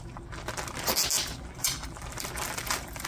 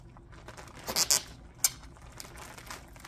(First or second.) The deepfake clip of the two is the first